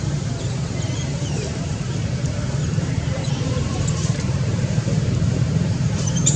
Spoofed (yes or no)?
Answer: yes